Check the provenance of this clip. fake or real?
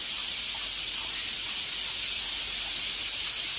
real